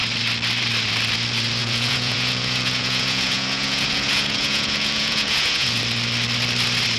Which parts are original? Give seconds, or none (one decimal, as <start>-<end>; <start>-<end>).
0.0-1.6; 5.8-7.0